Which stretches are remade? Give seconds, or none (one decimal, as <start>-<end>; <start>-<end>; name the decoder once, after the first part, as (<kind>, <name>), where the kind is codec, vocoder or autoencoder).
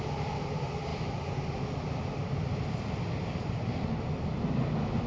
none